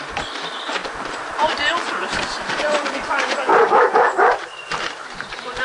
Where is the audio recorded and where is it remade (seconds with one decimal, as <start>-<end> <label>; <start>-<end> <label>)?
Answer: 0.0-0.8 recorded; 0.8-3.1 remade; 3.1-3.5 recorded; 3.5-5.6 remade